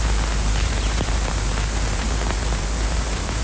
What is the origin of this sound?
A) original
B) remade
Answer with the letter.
B